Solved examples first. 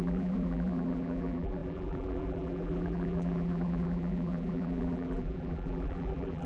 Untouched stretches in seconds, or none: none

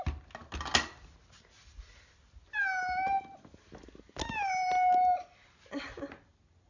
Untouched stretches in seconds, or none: 0.0-6.7

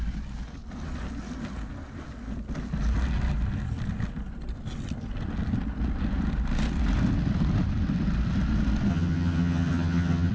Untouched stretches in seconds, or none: 0.0-8.9

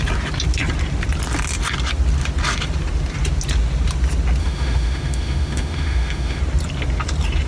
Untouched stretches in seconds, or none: 0.0-4.4; 6.4-7.5

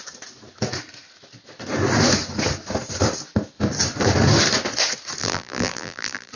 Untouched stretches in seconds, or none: 0.0-5.2